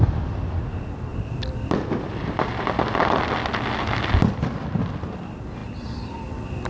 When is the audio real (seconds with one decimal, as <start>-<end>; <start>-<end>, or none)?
0.0-1.1; 3.2-5.6; 6.3-6.7